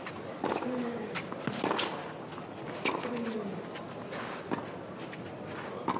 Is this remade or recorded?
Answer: recorded